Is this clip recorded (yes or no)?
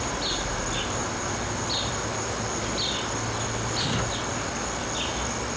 yes